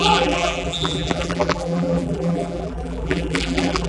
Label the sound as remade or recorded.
remade